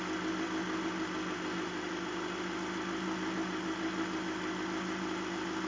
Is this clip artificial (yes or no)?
no